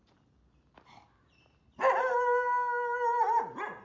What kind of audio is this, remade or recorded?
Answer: recorded